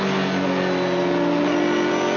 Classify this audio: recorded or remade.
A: recorded